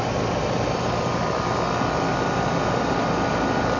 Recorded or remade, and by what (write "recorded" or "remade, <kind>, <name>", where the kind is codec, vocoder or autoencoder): recorded